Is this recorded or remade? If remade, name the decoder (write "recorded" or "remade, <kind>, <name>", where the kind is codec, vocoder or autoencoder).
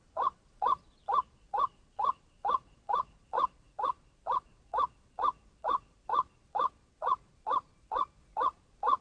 remade, vocoder, Vocos